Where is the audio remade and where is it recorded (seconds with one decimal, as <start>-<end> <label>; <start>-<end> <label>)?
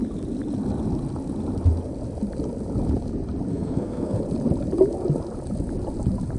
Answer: 0.0-3.5 recorded; 3.5-4.2 remade; 4.2-6.4 recorded